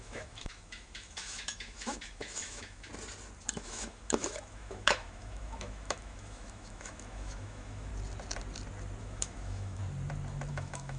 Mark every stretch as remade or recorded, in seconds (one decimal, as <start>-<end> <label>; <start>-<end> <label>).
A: 0.0-2.9 remade; 2.9-3.5 recorded; 3.5-7.9 remade; 7.9-9.0 recorded; 9.0-9.8 remade; 9.8-10.5 recorded; 10.5-11.0 remade